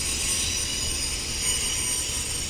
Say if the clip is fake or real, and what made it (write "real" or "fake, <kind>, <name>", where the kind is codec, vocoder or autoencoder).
real